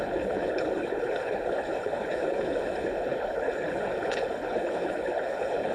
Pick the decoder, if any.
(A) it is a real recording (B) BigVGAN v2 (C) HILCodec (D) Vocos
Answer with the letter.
C